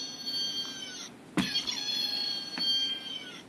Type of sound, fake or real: real